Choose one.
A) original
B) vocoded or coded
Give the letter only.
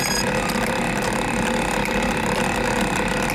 A